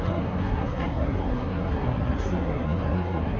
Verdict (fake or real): fake